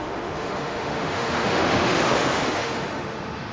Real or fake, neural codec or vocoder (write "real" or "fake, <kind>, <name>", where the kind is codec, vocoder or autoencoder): fake, autoencoder, DAC-VAE